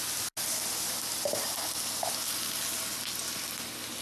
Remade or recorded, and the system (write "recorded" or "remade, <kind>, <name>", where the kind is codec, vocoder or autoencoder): recorded